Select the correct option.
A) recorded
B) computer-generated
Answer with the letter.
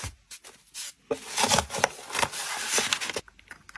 A